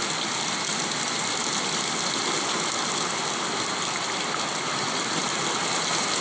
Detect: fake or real real